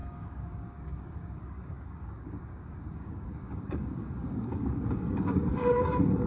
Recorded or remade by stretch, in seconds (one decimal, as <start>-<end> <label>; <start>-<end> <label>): 0.0-6.3 remade